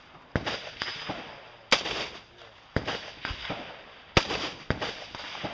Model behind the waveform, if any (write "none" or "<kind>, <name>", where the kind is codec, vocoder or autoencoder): none